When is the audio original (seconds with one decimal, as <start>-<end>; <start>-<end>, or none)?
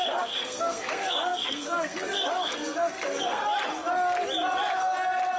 3.4-5.4